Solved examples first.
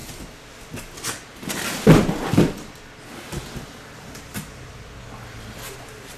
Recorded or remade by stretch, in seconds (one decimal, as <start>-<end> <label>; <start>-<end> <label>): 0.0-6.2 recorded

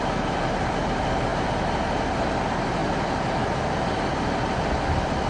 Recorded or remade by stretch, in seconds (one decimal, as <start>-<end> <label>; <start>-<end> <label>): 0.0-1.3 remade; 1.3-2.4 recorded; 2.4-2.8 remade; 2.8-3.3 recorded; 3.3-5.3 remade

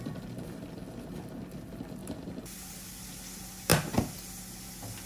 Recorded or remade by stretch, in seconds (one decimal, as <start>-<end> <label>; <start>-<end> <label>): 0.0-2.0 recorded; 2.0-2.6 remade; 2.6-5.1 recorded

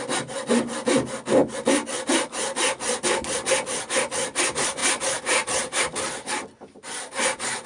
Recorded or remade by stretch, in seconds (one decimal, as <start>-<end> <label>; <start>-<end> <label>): 0.0-4.8 recorded; 4.8-5.8 remade; 5.8-7.7 recorded